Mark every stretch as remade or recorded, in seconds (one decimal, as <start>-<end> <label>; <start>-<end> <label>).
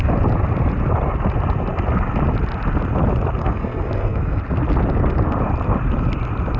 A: 0.0-3.4 recorded; 3.4-4.4 remade; 4.4-6.6 recorded